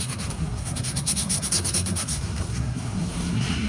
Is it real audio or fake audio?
fake